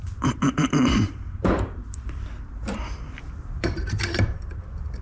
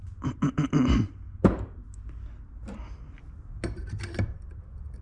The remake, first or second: first